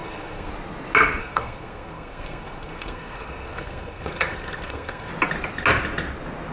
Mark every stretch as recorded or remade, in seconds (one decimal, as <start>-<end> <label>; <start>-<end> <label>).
0.0-0.5 remade; 0.5-1.2 recorded; 1.2-5.1 remade; 5.1-6.5 recorded